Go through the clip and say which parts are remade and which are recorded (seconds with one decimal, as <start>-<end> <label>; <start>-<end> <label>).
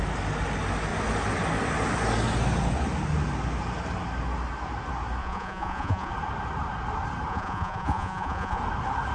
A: 0.0-5.2 recorded; 5.2-6.1 remade; 6.1-7.3 recorded; 7.3-8.6 remade; 8.6-9.1 recorded